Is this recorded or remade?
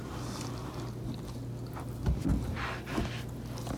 recorded